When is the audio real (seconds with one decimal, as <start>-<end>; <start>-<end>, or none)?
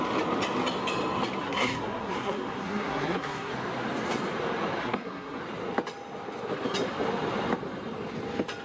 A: 0.0-1.4; 3.5-4.8; 5.4-8.6